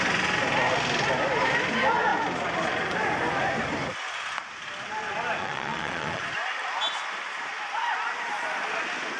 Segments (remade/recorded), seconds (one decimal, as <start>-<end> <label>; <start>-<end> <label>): 0.0-5.4 recorded; 5.4-6.2 remade; 6.2-9.2 recorded